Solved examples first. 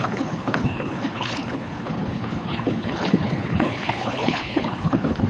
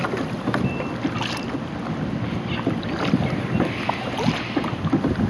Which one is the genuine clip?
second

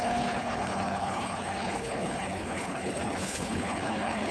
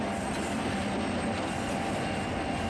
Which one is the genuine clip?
second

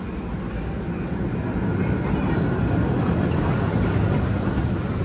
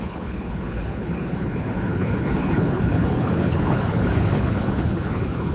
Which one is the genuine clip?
first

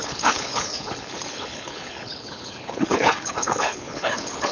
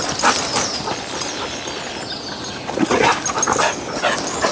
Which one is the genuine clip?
second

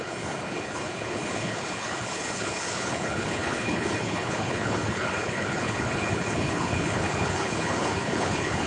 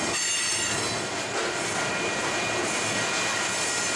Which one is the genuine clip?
second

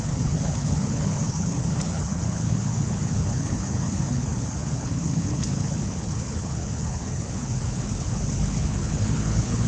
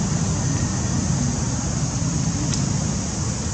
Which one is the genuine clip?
second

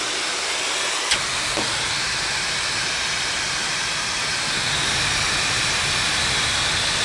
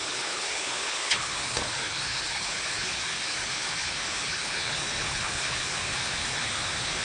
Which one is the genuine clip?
first